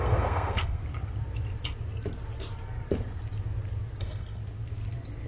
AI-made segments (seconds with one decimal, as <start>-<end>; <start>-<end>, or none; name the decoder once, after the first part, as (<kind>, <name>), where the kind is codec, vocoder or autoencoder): 0.0-0.8 (codec, SNAC); 4.0-4.4